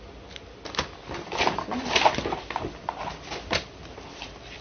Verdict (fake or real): real